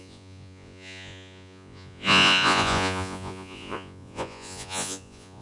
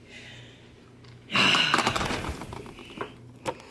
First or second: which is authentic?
second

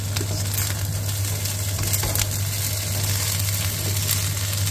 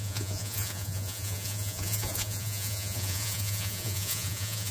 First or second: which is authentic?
first